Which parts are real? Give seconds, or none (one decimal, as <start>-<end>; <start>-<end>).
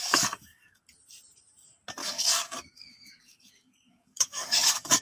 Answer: 0.8-2.0